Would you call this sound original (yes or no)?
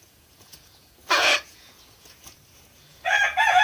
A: no